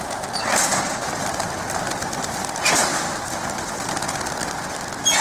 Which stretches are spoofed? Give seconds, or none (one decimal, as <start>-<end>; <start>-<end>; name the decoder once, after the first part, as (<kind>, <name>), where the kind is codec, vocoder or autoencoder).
none